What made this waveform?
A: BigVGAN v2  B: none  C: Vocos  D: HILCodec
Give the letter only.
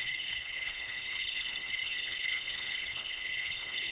D